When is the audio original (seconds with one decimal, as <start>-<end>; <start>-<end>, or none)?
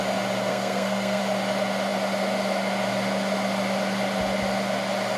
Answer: 0.0-0.5; 1.2-5.2